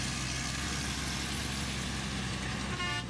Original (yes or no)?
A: yes